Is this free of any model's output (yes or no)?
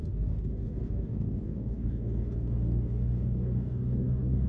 no